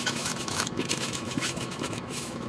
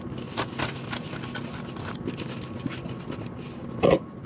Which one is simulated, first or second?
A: first